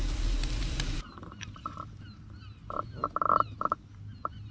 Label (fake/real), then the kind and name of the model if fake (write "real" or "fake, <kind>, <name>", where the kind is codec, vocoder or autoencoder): fake, vocoder, BigVGAN v2